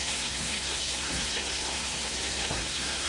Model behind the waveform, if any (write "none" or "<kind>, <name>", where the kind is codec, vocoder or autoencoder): codec, SNAC